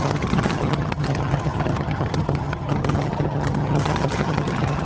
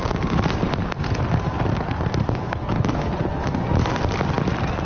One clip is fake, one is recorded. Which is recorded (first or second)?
second